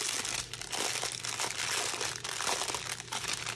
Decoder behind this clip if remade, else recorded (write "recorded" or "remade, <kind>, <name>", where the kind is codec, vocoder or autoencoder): recorded